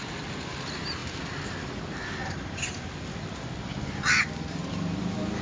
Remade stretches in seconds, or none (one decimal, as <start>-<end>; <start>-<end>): none